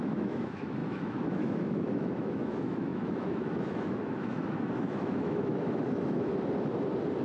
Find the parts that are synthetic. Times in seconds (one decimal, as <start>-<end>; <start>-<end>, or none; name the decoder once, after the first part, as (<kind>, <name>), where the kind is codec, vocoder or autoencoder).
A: 0.0-6.3 (autoencoder, DAC-VAE)